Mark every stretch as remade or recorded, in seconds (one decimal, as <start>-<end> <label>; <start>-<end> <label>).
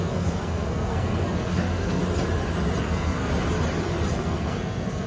0.0-2.0 remade; 2.0-2.8 recorded; 2.8-3.3 remade; 3.3-4.1 recorded; 4.1-5.1 remade